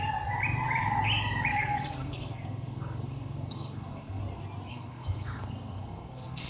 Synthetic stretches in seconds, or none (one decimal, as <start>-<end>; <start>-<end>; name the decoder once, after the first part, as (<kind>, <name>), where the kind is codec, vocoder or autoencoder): 1.5-4.2 (codec, SNAC); 4.7-6.5